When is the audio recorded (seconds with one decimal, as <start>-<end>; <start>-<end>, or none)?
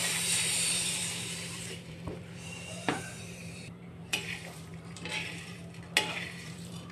5.6-6.1